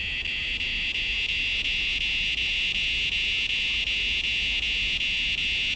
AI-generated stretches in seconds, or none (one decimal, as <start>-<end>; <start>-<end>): none

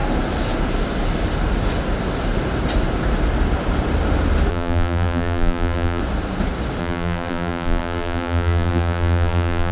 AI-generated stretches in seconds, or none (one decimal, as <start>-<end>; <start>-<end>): 4.5-6.0; 6.8-9.7

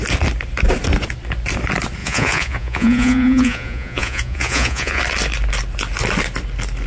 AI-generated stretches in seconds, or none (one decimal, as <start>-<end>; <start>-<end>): 2.0-5.0

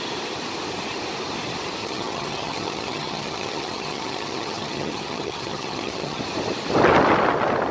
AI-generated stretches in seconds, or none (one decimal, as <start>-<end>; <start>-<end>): 1.8-6.2